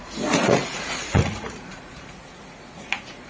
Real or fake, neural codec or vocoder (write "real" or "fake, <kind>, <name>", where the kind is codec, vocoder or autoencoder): fake, vocoder, Vocos